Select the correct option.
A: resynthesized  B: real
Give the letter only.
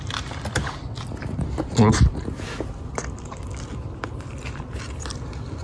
B